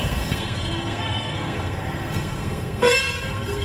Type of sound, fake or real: fake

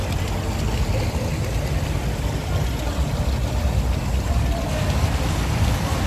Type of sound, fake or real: real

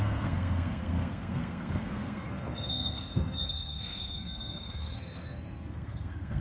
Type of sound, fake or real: fake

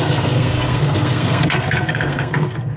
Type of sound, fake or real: fake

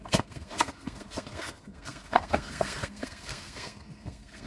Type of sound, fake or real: fake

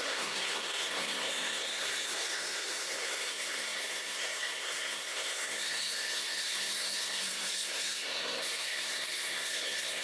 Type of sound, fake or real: fake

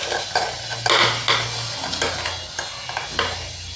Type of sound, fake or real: real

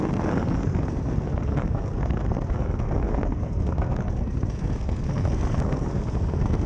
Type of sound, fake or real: fake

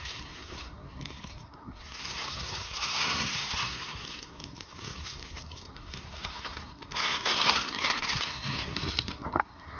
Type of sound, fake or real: fake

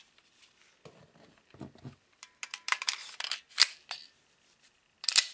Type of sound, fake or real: real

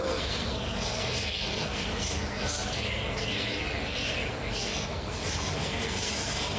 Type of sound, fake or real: fake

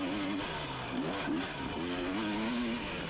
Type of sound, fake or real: real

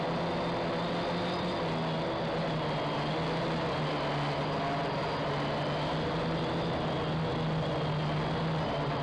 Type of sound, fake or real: real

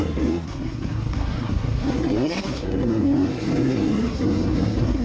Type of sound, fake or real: fake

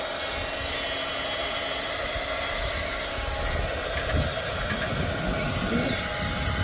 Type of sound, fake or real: real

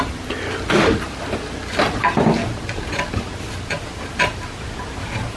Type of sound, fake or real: real